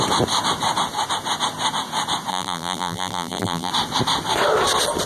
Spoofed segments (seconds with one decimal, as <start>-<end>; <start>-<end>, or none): 2.3-3.7